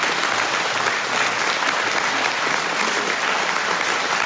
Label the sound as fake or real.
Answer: real